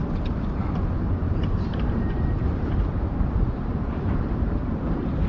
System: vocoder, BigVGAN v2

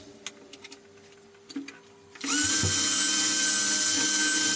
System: none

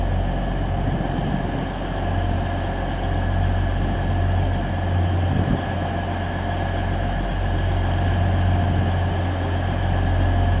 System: none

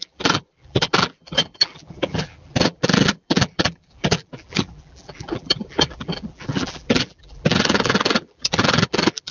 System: vocoder, BigVGAN v2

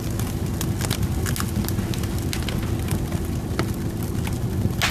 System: none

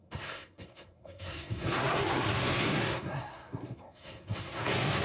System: codec, SNAC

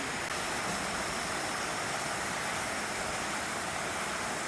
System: none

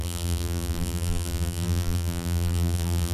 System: vocoder, BigVGAN v2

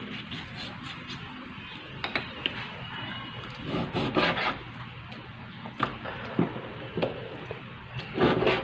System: none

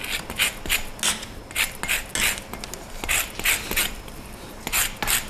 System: none